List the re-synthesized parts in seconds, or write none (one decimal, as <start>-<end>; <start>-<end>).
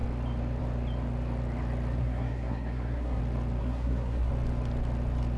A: 2.0-3.2; 3.6-4.3